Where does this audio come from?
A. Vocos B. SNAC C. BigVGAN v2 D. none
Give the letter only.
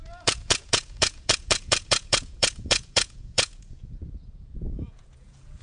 A